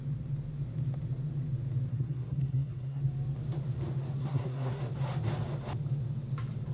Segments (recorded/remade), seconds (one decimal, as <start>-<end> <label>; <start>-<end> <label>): 0.0-1.9 recorded; 1.9-3.0 remade; 3.0-4.2 recorded; 4.2-4.8 remade; 4.8-6.7 recorded

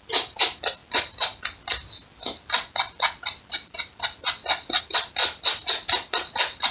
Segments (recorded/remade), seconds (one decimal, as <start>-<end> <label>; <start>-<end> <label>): 0.0-6.7 recorded